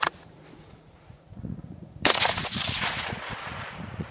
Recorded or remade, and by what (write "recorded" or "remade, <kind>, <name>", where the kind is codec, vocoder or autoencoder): remade, vocoder, Vocos